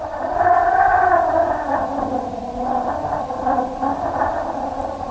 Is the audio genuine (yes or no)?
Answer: yes